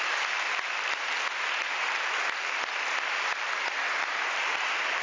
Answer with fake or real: fake